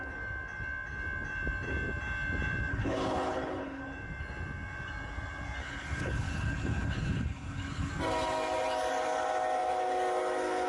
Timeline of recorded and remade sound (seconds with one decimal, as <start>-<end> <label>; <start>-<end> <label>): 0.0-2.7 recorded; 2.7-3.8 remade; 3.8-5.6 recorded; 5.6-7.9 remade; 7.9-10.7 recorded